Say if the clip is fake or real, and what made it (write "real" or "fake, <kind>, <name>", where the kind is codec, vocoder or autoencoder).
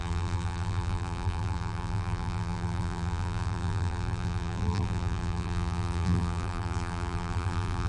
fake, vocoder, BigVGAN v2